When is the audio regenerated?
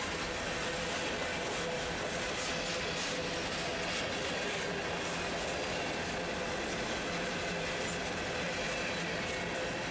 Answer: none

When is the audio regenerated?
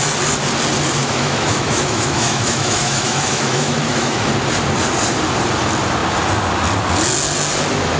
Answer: 1.0-4.3 (autoencoder, DAC-VAE)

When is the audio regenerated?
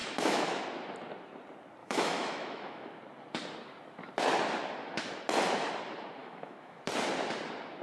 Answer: 0.0-0.6 (autoencoder, DAC-VAE); 1.8-3.0; 6.2-6.8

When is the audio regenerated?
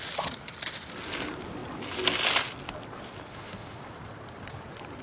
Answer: 3.3-3.8 (autoencoder, DAC-VAE)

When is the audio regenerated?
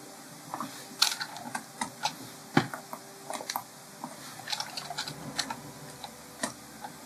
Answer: none